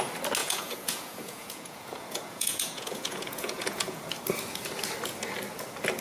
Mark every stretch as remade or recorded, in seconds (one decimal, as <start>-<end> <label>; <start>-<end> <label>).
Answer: 0.0-0.4 recorded; 0.4-4.0 remade; 4.0-6.0 recorded